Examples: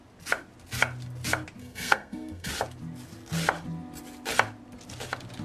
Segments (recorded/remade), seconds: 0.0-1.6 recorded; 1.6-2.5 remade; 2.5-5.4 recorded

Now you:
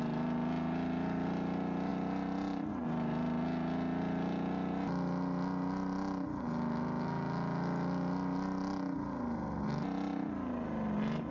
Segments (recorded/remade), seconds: 0.0-11.3 recorded

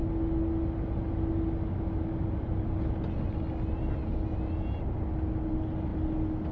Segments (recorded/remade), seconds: 0.0-6.5 recorded

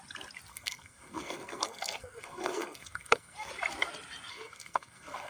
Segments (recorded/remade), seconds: 0.0-0.5 recorded; 0.5-3.5 remade; 3.5-4.3 recorded; 4.3-5.3 remade